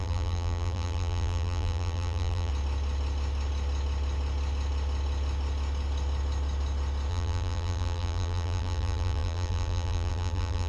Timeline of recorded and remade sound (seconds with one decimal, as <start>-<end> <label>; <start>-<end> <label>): 0.0-2.5 remade; 2.5-7.1 recorded; 7.1-10.7 remade